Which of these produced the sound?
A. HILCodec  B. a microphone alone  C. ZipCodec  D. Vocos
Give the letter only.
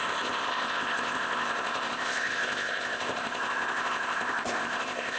C